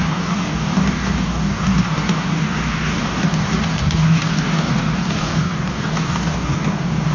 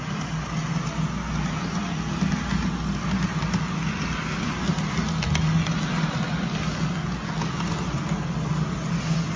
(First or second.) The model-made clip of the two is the first